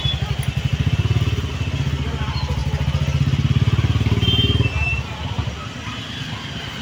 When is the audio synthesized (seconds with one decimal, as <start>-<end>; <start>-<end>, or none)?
none